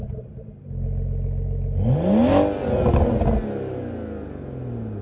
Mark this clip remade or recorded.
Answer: recorded